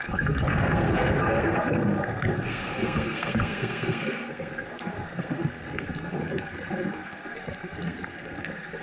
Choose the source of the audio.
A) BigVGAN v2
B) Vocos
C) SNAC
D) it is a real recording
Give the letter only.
C